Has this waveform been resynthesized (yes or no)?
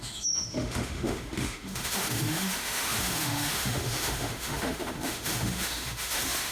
yes